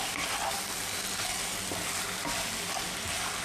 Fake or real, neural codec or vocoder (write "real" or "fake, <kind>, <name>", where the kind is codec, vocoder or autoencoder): real